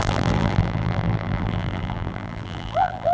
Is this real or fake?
fake